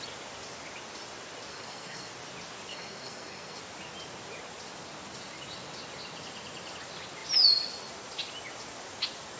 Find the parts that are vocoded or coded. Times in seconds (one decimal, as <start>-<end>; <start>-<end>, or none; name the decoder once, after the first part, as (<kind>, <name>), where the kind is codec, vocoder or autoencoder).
1.5-2.1 (codec, SNAC); 2.7-3.6